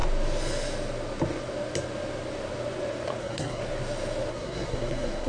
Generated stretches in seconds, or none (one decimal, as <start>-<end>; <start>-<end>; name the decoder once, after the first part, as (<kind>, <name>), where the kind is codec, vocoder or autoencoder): 3.2-3.6 (codec, SNAC); 4.3-5.3